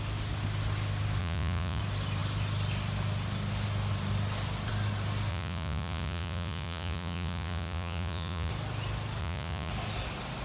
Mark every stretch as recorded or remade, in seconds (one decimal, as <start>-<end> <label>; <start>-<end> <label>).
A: 0.0-1.2 recorded; 1.2-1.8 remade; 1.8-5.3 recorded; 5.3-8.5 remade; 8.5-9.2 recorded; 9.2-9.7 remade; 9.7-10.4 recorded